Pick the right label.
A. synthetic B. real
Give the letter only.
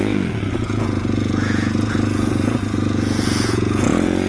A